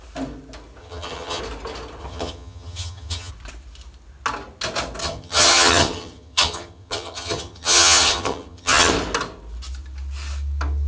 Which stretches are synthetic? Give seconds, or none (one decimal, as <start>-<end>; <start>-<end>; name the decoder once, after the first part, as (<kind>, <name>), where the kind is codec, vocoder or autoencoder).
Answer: 0.8-1.4 (vocoder, HiFi-GAN); 2.0-3.3; 5.0-8.9